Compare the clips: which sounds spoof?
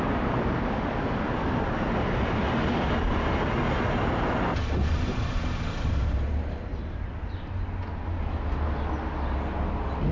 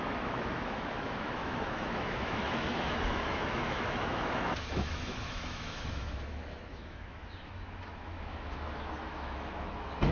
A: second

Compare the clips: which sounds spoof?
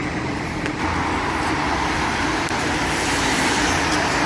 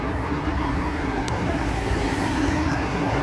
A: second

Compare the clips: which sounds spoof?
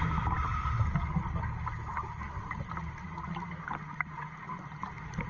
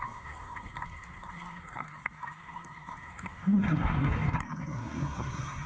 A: second